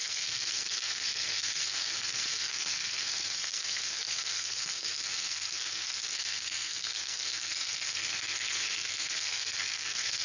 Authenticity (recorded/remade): remade